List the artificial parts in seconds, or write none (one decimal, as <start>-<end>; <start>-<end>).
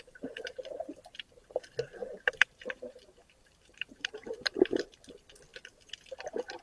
2.0-5.1